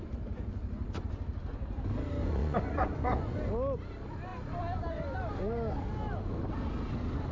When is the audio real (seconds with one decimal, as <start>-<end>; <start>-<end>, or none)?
0.0-2.2; 3.5-7.3